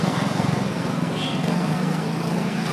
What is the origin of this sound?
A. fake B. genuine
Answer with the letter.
A